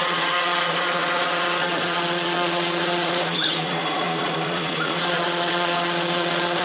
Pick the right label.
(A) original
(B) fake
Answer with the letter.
B